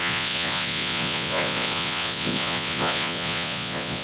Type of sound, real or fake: fake